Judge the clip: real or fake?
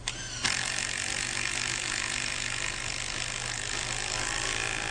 real